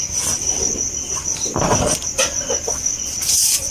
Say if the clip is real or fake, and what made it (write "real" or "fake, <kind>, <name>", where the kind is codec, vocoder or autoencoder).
real